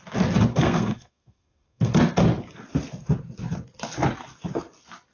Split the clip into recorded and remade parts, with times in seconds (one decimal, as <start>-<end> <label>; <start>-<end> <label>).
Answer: 0.0-0.5 recorded; 0.5-1.9 remade; 1.9-5.1 recorded